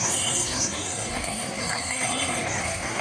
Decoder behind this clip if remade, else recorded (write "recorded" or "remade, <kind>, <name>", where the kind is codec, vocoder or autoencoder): remade, codec, SNAC